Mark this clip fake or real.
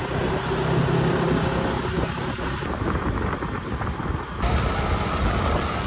real